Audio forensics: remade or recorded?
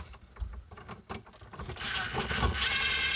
recorded